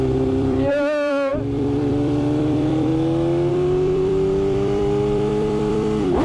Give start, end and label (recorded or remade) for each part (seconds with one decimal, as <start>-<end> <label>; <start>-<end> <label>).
0.0-2.9 remade; 2.9-3.5 recorded; 3.5-6.2 remade